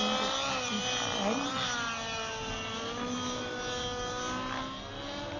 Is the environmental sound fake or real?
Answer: real